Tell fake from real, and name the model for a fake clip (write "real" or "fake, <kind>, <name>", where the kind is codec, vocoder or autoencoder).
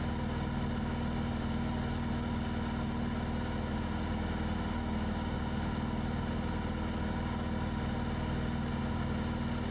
real